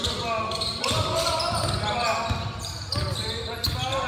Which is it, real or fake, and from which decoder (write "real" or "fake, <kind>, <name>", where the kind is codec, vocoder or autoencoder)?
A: real